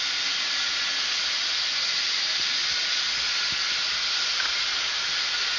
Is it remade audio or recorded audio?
recorded